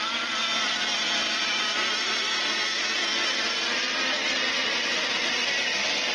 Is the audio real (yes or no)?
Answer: yes